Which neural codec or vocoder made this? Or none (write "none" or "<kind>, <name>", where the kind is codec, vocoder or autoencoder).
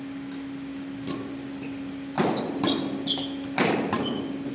none